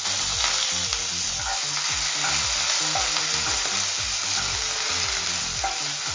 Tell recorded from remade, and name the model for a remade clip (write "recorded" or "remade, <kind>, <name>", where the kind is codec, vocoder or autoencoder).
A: recorded